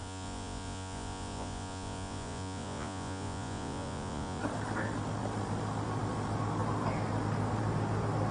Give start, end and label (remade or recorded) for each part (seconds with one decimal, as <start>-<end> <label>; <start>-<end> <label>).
0.0-4.4 remade; 4.4-8.3 recorded